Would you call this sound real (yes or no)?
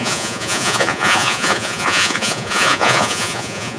no